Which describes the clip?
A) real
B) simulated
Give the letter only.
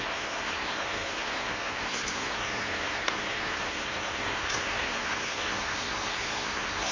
B